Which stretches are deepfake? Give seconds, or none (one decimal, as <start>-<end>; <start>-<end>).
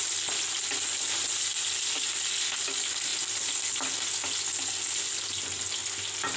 none